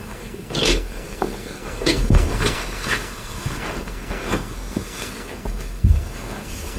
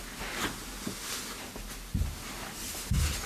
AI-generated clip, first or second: first